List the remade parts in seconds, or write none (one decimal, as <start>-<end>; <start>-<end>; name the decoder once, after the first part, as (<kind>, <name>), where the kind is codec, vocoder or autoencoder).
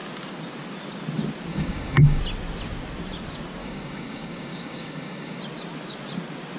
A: 1.5-2.2 (codec, DAC); 3.6-5.4